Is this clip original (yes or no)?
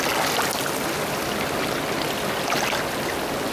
yes